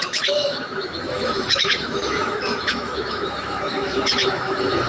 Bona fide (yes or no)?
no